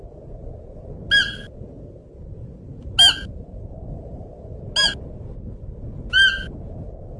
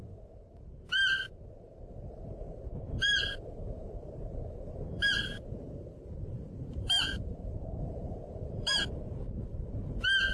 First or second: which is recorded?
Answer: first